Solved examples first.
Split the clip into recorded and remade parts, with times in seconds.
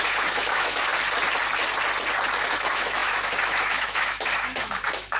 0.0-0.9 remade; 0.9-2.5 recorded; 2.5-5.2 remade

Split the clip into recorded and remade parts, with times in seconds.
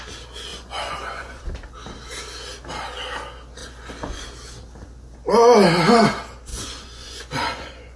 0.0-0.5 recorded; 0.5-1.4 remade; 1.4-3.6 recorded; 3.6-4.2 remade; 4.2-6.5 recorded; 6.5-8.0 remade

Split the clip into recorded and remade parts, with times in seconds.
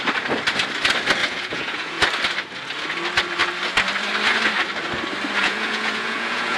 0.0-1.2 recorded; 1.2-2.0 remade; 2.0-5.4 recorded; 5.4-6.6 remade